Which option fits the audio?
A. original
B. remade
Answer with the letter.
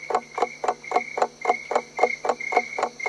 A